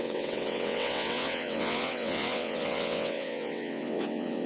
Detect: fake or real fake